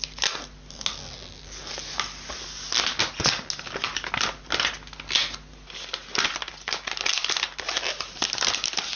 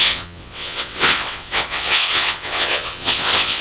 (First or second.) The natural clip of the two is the first